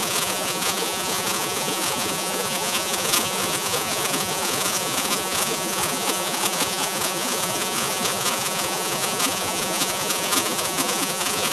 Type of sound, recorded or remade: remade